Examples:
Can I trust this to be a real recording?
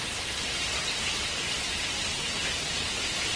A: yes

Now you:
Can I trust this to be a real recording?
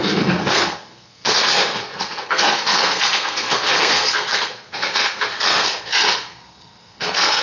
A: no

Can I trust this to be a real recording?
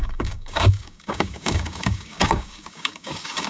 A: no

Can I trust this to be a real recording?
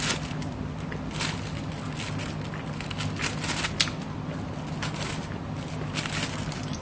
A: yes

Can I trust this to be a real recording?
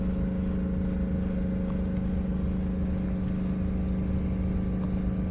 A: yes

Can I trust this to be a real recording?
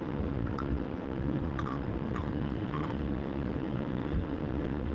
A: no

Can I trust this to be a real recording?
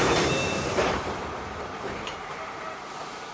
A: no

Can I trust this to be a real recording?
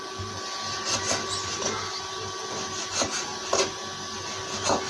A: yes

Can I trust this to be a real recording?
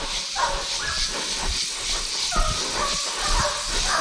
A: yes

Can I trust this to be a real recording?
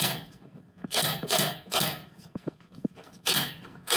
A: no